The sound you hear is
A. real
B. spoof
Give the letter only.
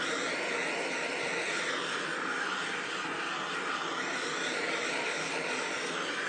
A